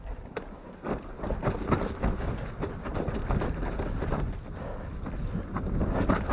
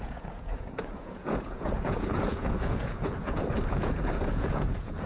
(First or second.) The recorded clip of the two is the first